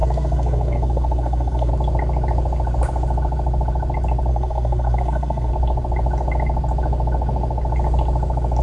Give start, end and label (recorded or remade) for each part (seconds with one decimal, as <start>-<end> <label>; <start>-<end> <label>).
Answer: 0.0-1.7 remade; 1.7-4.3 recorded; 4.3-5.5 remade; 5.5-8.6 recorded